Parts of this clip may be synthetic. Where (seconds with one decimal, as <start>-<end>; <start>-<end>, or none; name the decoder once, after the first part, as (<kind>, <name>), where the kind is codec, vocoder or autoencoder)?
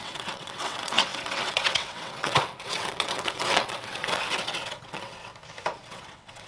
0.0-5.3 (vocoder, WaveNeXt); 5.8-6.5